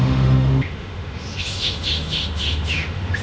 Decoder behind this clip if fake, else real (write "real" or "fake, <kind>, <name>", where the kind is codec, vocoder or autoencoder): fake, autoencoder, DAC-VAE